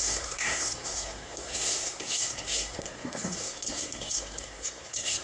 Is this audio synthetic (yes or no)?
yes